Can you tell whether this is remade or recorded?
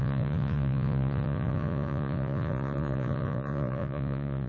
remade